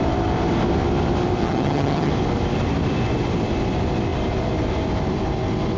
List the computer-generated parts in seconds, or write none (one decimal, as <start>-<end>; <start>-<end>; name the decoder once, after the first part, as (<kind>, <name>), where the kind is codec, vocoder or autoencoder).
1.4-2.1 (vocoder, HiFi-GAN)